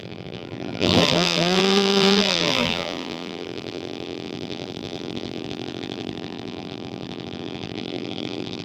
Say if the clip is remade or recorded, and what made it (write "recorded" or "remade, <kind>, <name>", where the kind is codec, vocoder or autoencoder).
remade, vocoder, BigVGAN v2